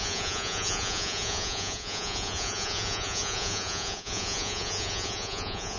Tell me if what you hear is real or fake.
fake